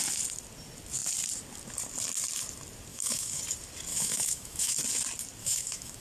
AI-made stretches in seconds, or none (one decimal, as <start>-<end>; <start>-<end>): 2.9-3.4; 3.9-4.8; 5.4-6.0